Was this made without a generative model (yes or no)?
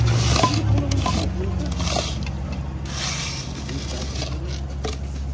yes